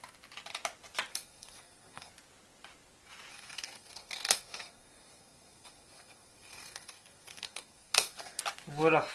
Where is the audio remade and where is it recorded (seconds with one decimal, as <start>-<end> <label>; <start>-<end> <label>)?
0.0-1.1 recorded; 1.1-2.1 remade; 2.1-3.3 recorded; 3.3-8.4 remade; 8.4-9.1 recorded